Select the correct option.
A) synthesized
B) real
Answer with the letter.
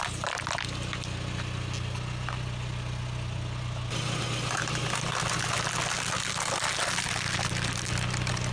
B